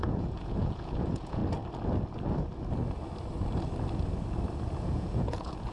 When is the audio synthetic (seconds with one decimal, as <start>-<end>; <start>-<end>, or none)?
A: 0.0-1.4; 4.8-5.7